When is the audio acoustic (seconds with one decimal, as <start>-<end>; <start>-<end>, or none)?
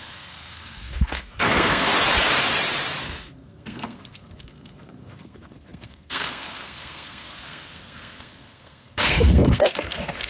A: 1.9-3.0